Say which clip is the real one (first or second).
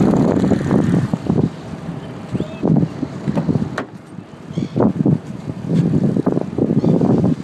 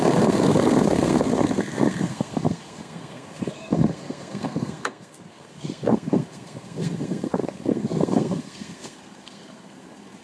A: first